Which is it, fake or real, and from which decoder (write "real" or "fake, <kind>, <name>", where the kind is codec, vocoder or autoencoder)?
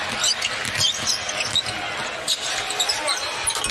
real